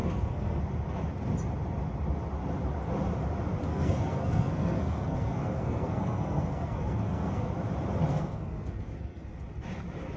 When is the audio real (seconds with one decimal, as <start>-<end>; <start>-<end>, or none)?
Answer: 0.6-3.7; 7.5-8.1; 9.3-10.2